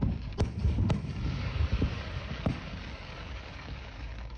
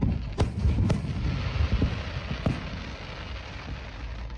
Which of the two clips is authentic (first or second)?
second